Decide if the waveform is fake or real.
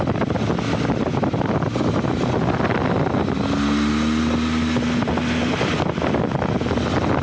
real